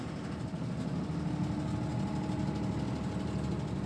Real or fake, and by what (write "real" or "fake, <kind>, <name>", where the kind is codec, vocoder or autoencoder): real